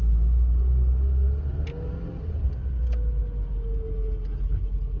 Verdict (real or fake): real